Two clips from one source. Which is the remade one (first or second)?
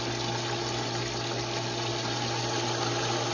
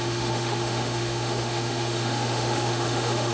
second